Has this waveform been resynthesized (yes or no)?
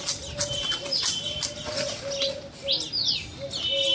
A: no